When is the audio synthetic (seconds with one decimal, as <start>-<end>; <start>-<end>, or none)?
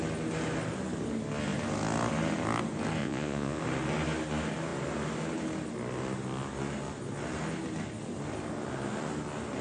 3.0-3.6